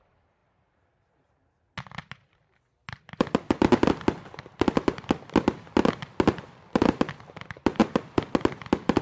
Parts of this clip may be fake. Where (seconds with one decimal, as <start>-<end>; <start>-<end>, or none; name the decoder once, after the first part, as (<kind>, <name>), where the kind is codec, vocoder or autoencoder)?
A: none